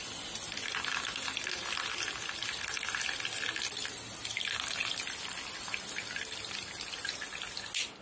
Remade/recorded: recorded